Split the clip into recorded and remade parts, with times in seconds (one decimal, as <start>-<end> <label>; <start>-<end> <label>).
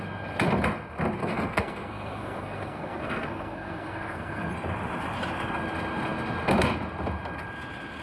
0.0-1.2 recorded; 1.2-4.5 remade; 4.5-8.0 recorded